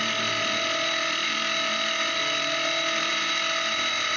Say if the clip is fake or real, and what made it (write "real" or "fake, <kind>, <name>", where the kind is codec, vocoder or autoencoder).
real